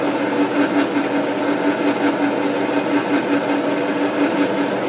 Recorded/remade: recorded